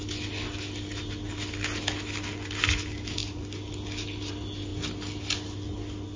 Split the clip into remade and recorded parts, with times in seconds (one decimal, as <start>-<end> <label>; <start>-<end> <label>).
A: 0.0-6.2 recorded